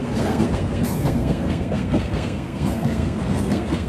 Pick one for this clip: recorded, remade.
remade